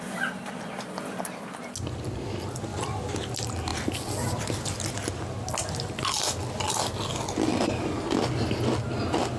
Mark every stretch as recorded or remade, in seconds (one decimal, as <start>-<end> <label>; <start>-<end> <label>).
0.0-9.4 recorded